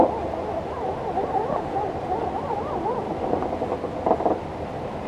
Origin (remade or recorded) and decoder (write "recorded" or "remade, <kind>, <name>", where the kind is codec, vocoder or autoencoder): recorded